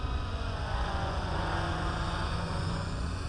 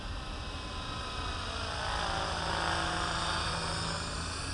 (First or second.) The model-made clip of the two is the first